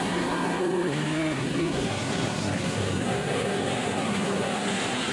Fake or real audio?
fake